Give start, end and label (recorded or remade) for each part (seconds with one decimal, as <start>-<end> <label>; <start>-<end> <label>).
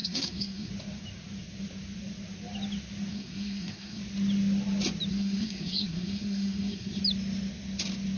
0.0-0.7 remade; 0.7-3.1 recorded; 3.1-4.0 remade; 4.0-5.1 recorded; 5.1-7.0 remade; 7.0-8.2 recorded